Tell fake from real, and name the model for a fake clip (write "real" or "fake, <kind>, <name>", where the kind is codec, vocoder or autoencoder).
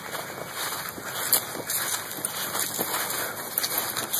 real